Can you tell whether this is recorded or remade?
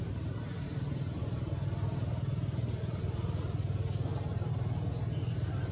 recorded